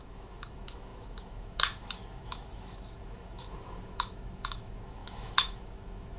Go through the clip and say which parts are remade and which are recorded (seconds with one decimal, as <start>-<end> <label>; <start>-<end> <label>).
0.0-6.2 remade